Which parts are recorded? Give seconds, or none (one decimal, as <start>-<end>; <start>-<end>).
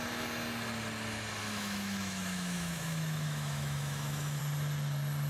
0.0-1.4; 4.4-5.3